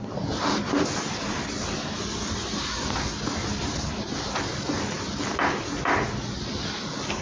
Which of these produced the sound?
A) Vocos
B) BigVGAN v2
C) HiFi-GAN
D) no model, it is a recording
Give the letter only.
D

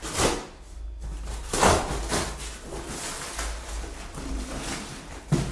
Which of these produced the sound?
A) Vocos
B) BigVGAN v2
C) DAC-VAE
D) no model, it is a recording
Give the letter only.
D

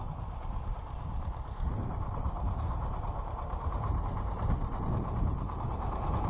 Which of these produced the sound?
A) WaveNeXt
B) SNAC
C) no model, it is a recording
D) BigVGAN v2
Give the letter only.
D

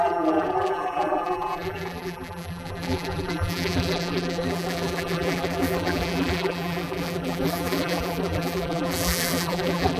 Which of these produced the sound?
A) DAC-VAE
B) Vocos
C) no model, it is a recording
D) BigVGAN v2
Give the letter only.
D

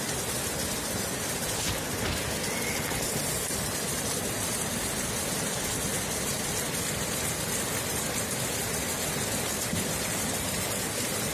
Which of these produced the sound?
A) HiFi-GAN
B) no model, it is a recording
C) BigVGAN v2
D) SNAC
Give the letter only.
B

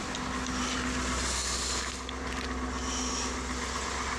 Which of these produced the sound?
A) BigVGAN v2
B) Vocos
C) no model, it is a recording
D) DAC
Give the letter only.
C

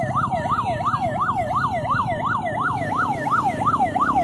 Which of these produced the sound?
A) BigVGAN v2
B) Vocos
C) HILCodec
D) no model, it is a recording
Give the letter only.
D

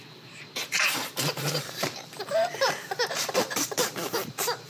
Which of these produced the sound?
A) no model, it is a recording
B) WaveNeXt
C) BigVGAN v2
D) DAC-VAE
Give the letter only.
C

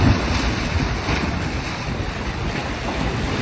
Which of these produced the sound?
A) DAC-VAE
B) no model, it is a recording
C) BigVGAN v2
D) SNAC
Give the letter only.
C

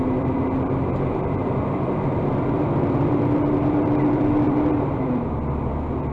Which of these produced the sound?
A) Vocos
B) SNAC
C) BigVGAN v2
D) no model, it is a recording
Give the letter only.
C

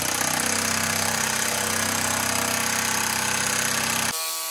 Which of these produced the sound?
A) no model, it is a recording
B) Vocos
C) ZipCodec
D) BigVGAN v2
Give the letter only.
A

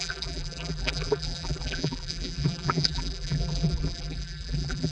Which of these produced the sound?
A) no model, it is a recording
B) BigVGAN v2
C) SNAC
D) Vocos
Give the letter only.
B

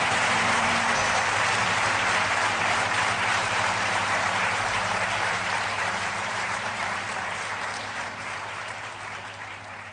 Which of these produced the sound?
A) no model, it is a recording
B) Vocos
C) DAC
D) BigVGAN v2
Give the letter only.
D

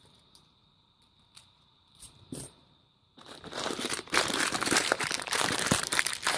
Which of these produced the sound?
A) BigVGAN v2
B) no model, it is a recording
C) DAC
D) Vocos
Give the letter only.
A